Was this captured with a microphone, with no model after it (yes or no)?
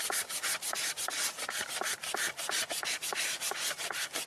yes